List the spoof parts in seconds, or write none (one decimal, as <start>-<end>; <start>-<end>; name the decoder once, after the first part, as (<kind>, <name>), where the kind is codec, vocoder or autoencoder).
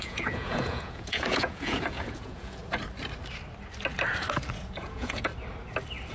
0.0-2.6 (vocoder, Vocos); 4.8-5.3